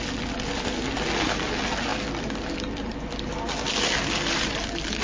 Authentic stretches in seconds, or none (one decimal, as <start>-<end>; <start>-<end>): 0.0-5.0